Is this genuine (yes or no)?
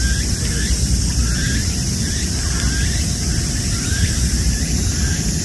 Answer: no